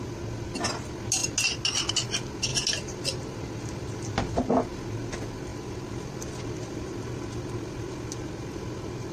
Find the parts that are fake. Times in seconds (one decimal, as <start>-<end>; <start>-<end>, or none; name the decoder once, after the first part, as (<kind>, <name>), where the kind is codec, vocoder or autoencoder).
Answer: 2.5-4.4 (vocoder, BigVGAN v2); 5.5-7.2